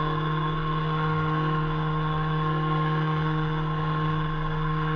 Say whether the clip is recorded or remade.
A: remade